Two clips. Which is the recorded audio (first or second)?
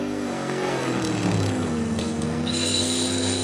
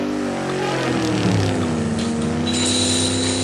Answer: second